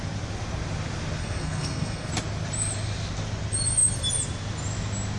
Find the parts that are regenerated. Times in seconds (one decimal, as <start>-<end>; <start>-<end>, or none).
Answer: 1.2-2.1